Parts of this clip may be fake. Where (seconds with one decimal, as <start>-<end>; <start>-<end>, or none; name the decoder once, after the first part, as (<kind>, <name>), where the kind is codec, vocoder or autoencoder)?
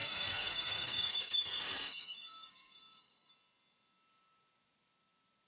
0.0-3.3 (codec, SNAC)